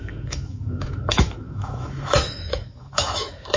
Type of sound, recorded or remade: remade